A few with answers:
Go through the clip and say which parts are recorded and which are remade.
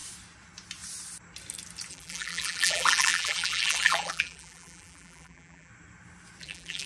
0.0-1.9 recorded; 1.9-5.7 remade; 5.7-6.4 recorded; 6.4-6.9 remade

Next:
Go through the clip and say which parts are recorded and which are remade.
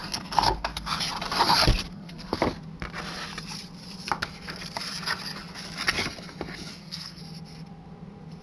0.0-1.0 remade; 1.0-1.9 recorded; 1.9-2.4 remade; 2.4-6.7 recorded; 6.7-7.2 remade; 7.2-8.4 recorded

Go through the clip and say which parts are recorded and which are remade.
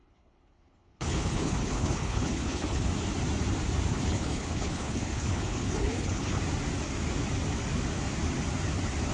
0.0-2.9 remade; 2.9-3.9 recorded; 3.9-6.4 remade; 6.4-9.1 recorded